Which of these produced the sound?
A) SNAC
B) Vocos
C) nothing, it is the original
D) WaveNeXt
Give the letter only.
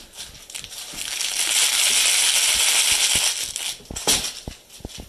C